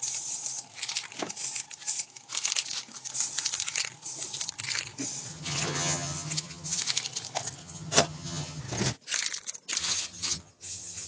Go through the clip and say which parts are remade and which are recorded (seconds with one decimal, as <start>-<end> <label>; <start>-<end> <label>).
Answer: 0.0-5.3 recorded; 5.3-6.8 remade; 6.8-7.6 recorded; 7.6-8.6 remade; 8.6-9.8 recorded; 9.8-11.1 remade